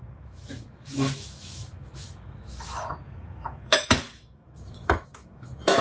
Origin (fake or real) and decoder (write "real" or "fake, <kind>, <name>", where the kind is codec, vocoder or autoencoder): fake, autoencoder, DAC-VAE